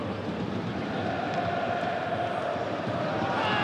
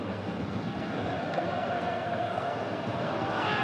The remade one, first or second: second